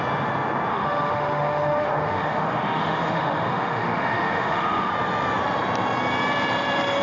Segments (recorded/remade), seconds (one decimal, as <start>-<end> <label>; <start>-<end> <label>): 0.0-0.7 recorded; 0.7-4.9 remade; 4.9-7.0 recorded

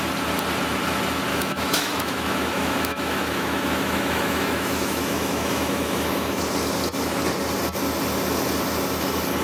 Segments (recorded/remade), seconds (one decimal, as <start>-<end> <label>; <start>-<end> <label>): 0.0-1.3 recorded; 1.3-6.4 remade; 6.4-9.4 recorded

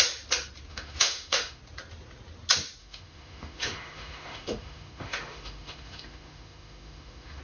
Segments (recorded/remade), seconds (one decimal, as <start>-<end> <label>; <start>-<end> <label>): 0.0-0.7 recorded; 0.7-1.6 remade; 1.6-2.8 recorded; 2.8-7.4 remade

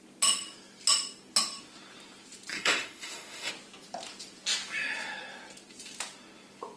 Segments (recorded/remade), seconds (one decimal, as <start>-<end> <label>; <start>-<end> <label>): 0.0-2.5 recorded; 2.5-3.5 remade; 3.5-6.8 recorded

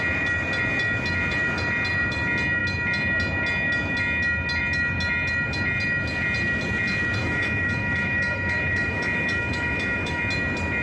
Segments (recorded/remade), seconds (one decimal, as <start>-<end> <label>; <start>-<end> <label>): 0.0-7.2 recorded; 7.2-10.2 remade; 10.2-10.8 recorded

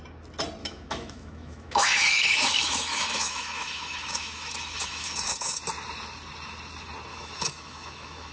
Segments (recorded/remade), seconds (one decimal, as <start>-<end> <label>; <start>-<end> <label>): 0.0-0.6 recorded; 0.6-5.6 remade; 5.6-7.1 recorded; 7.1-8.3 remade